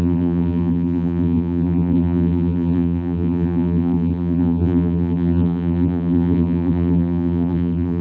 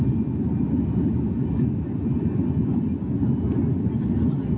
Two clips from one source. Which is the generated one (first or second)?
first